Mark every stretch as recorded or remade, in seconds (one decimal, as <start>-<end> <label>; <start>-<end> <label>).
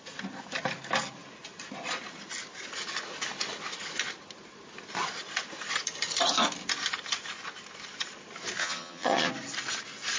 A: 0.0-8.6 recorded; 8.6-9.3 remade; 9.3-10.2 recorded